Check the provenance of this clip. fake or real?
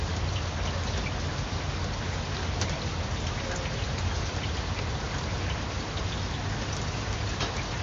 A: real